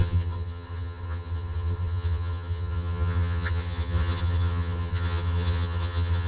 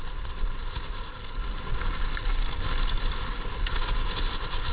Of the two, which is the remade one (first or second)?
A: first